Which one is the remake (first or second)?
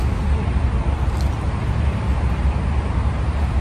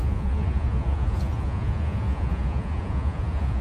second